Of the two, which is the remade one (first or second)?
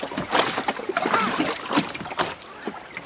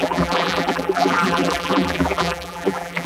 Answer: second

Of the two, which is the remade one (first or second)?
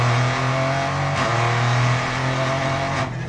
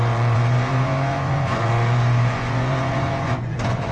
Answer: second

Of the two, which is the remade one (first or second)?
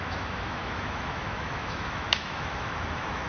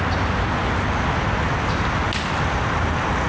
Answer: first